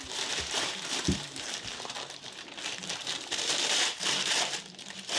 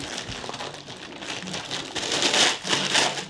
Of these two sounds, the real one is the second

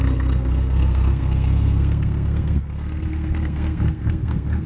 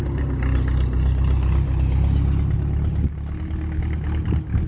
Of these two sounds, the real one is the second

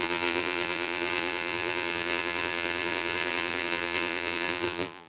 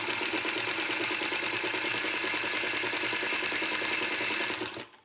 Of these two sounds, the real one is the second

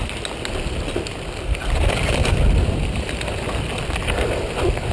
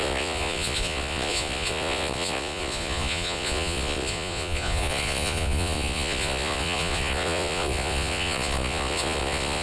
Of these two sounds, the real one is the first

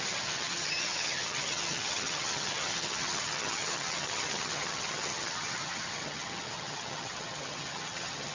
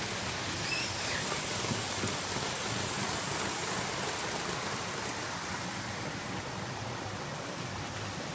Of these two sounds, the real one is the second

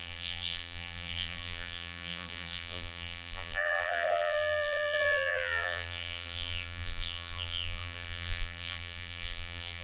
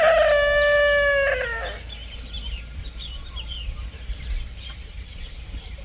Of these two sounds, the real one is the second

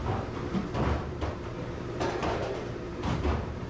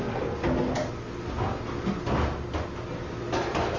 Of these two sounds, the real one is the second